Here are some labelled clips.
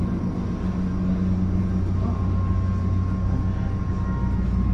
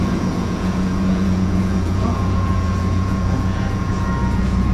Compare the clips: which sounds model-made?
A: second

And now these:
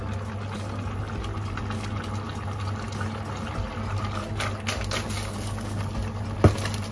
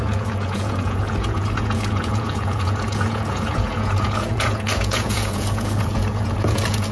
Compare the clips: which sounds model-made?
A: second